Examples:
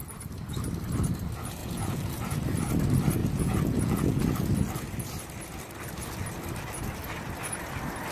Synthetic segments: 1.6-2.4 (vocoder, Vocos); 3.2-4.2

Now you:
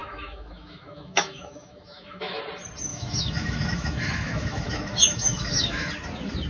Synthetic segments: 0.0-2.4 (autoencoder, DAC-VAE); 2.9-5.9

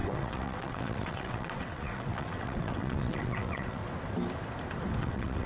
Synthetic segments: 0.0-3.8 (vocoder, WaveNeXt); 5.0-5.5

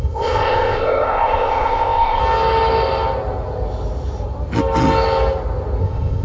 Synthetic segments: 0.0-2.2 (codec, ZipCodec); 5.8-6.2

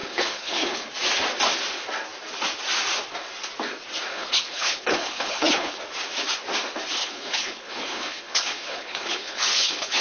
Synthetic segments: 0.0-0.9 (codec, HILCodec); 4.1-5.8; 7.0-10.0

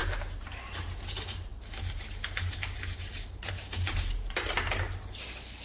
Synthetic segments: none